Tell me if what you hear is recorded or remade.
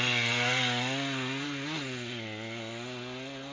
recorded